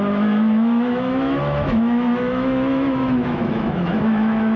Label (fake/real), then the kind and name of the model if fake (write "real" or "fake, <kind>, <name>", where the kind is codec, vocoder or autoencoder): fake, autoencoder, DAC-VAE